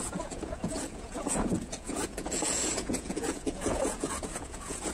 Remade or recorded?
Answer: remade